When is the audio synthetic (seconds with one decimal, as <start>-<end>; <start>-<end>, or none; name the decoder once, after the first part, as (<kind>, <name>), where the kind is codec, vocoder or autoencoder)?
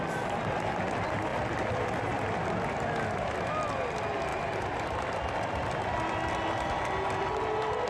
4.3-5.0 (vocoder, BigVGAN v2)